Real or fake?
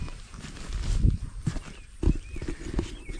real